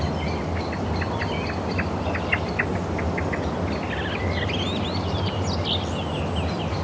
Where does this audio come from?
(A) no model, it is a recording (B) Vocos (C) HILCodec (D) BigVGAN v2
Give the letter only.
A